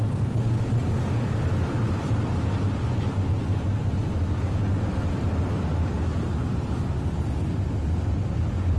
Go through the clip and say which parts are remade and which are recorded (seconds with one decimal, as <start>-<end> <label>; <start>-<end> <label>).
0.0-6.1 recorded; 6.1-6.7 remade; 6.7-8.8 recorded

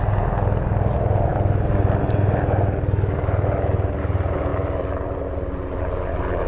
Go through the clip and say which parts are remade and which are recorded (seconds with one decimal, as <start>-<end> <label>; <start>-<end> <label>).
0.0-4.5 recorded; 4.5-5.8 remade; 5.8-6.5 recorded

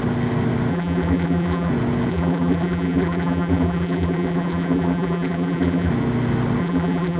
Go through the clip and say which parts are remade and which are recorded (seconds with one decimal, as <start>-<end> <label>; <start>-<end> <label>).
0.0-0.7 recorded; 0.7-1.7 remade; 1.7-2.1 recorded; 2.1-5.9 remade; 5.9-6.6 recorded; 6.6-7.2 remade

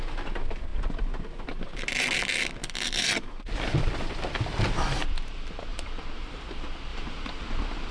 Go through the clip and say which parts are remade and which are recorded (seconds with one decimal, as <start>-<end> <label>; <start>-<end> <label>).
0.0-5.7 recorded; 5.7-6.5 remade; 6.5-6.9 recorded; 6.9-7.9 remade

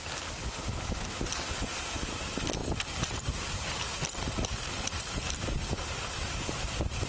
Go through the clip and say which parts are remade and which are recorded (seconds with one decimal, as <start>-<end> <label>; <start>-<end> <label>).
0.0-0.4 recorded; 0.4-1.2 remade; 1.2-7.1 recorded

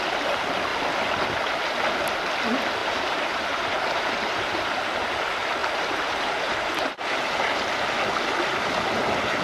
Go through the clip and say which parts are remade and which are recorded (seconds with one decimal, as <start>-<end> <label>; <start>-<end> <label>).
0.0-2.8 recorded; 2.8-4.7 remade; 4.7-5.6 recorded; 5.6-7.6 remade; 7.6-9.4 recorded

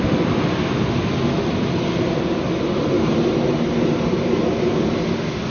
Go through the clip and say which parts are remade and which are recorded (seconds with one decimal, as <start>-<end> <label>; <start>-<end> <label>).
0.0-4.4 remade; 4.4-5.5 recorded